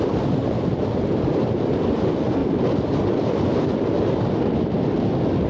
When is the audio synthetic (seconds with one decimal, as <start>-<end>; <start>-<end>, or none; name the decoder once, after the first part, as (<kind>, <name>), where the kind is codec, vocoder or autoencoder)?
none